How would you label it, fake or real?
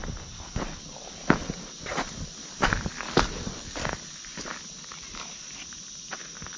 real